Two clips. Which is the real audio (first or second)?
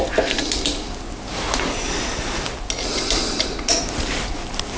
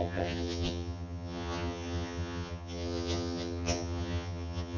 first